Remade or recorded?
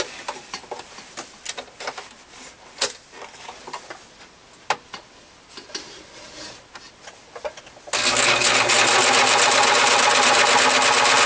recorded